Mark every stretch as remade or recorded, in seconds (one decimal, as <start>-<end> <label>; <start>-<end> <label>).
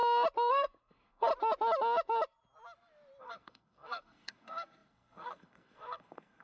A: 0.0-0.5 recorded; 0.5-1.3 remade; 1.3-3.2 recorded; 3.2-6.4 remade